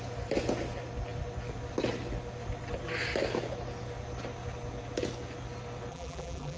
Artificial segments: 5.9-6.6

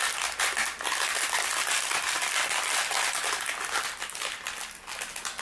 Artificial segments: 1.5-4.0

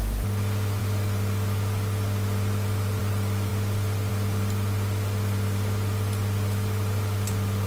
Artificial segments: none

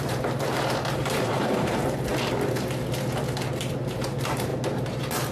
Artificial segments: 0.0-2.1; 3.6-4.5